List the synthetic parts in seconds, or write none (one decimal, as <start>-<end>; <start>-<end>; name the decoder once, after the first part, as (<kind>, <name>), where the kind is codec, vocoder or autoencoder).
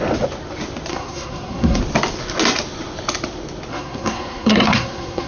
0.9-1.8 (codec, SNAC); 3.7-5.3